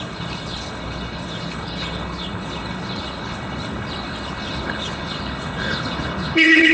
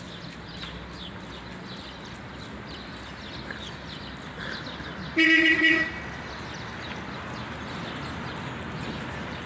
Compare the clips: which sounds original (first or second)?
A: second